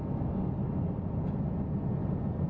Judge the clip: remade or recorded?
recorded